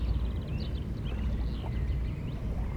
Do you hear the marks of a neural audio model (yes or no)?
no